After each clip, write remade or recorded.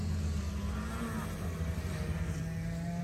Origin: recorded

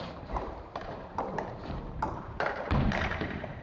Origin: remade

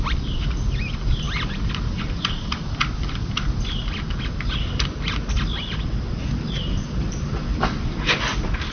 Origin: recorded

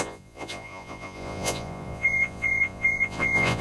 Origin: remade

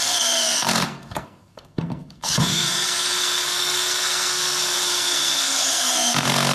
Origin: remade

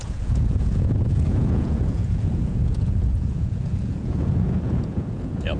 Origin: remade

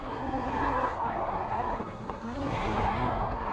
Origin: remade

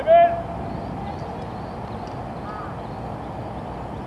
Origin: recorded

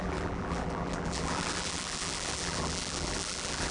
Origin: remade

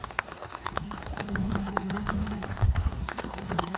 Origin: remade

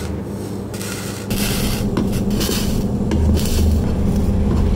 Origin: recorded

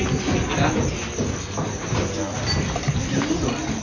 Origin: recorded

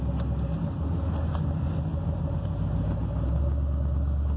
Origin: recorded